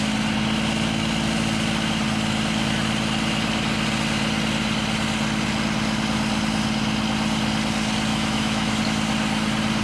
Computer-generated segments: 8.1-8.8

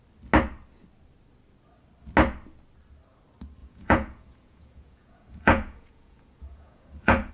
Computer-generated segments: 3.6-7.3

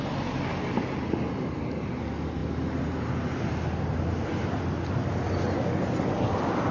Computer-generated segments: none

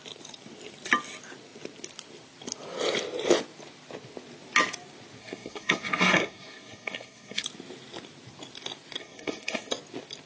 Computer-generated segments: 5.2-7.4; 9.0-9.7

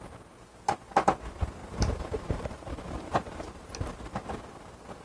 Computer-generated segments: 1.6-4.4

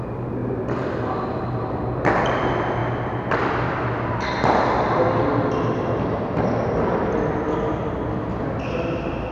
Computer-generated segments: 2.8-3.5